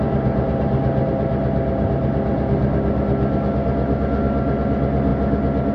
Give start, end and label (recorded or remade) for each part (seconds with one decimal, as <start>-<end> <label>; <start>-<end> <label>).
0.0-5.7 recorded